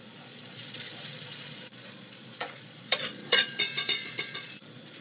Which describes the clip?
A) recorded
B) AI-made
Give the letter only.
B